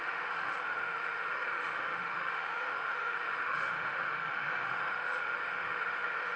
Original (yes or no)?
no